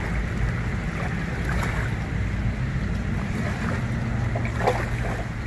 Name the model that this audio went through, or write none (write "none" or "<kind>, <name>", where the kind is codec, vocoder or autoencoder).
none